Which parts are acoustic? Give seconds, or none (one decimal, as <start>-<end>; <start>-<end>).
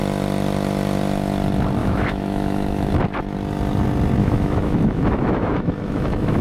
0.0-1.8; 2.9-4.2